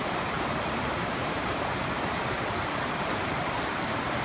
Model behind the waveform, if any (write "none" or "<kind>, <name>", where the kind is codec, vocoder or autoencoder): vocoder, BigVGAN v2